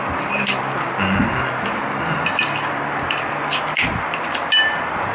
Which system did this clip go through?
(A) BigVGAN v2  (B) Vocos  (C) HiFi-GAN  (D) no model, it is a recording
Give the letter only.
D